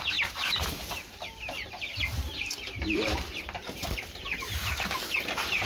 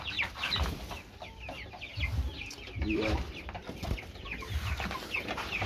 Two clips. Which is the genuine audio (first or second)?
second